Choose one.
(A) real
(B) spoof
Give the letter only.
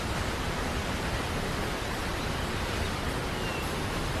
B